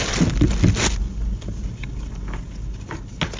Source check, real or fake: real